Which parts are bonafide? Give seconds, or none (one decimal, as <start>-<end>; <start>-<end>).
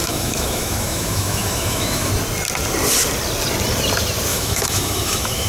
2.1-4.3